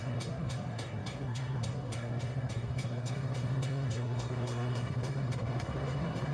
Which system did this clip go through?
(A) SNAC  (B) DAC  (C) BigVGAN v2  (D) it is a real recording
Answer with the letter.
A